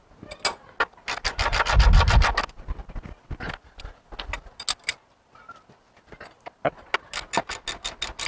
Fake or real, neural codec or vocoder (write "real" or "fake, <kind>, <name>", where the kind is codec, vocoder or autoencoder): real